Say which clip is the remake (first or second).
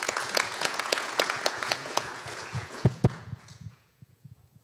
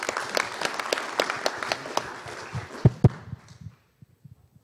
first